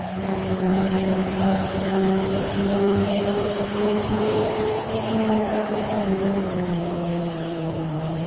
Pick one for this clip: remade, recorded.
remade